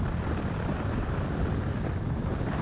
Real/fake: real